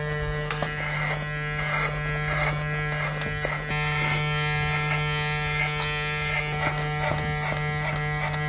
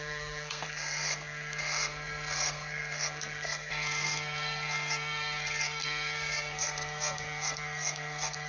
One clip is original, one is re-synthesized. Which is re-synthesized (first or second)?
second